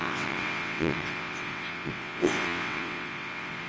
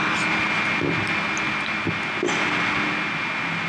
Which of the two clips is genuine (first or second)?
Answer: second